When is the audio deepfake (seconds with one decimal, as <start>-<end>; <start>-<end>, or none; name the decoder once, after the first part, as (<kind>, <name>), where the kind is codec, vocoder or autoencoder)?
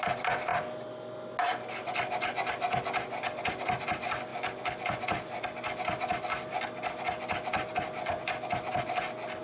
none